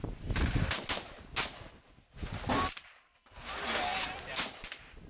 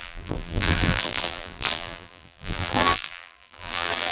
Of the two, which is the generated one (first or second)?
second